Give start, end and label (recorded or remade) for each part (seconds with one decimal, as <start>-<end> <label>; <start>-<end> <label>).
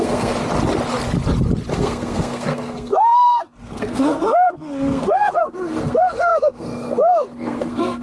0.0-0.4 remade; 0.4-1.7 recorded; 1.7-8.0 remade